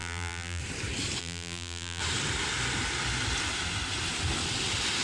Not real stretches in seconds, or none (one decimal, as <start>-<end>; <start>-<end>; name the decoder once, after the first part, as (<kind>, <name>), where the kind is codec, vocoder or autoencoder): 0.0-0.6 (vocoder, BigVGAN v2); 1.2-2.0